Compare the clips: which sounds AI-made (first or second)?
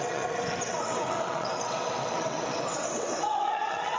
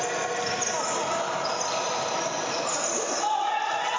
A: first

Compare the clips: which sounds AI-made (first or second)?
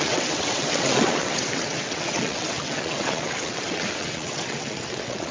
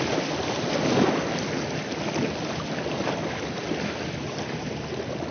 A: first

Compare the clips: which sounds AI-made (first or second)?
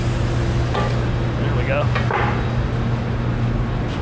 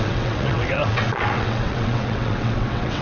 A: second